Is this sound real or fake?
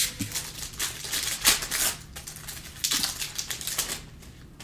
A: real